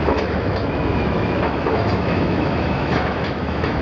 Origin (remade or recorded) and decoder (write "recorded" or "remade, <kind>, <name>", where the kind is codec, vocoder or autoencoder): remade, autoencoder, DAC-VAE